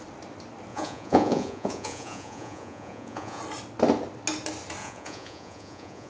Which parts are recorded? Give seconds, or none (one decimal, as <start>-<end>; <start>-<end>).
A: 0.0-0.7; 3.4-4.8